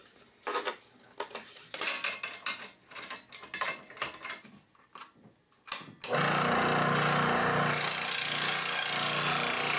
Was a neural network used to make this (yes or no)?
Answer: no